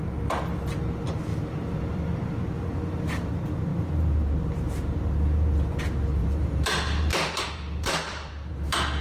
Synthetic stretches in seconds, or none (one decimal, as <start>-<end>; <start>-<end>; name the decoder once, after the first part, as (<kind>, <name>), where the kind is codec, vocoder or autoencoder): 1.3-3.3 (vocoder, BigVGAN v2); 6.2-8.5